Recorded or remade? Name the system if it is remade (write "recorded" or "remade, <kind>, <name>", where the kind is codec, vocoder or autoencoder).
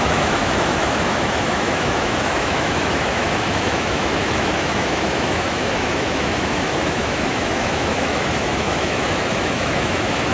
remade, autoencoder, DAC-VAE